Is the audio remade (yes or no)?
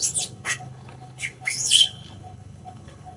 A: yes